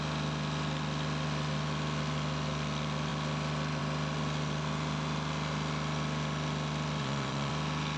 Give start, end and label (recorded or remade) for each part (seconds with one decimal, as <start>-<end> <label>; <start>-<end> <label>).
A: 0.0-7.0 recorded; 7.0-7.5 remade; 7.5-8.0 recorded